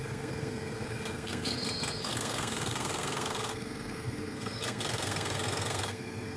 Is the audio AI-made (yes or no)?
yes